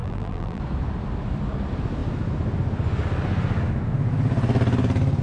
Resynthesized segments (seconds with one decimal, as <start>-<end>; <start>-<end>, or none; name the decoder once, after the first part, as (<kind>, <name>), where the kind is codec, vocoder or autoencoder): 0.0-0.6 (vocoder, BigVGAN v2)